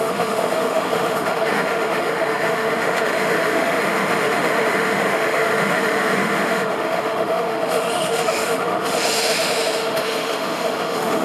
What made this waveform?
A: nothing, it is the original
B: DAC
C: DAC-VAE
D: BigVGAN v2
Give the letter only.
C